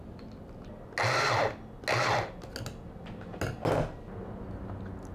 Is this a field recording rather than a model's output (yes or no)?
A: yes